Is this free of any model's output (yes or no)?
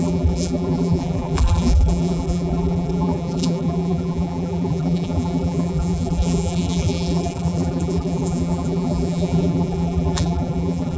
no